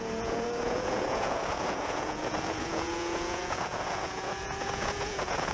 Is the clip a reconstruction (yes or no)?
yes